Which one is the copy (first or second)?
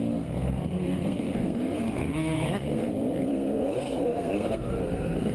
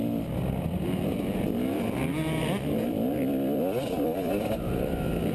first